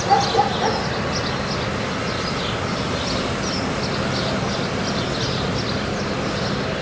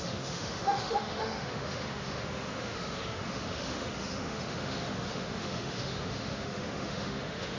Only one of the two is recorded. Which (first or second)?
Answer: first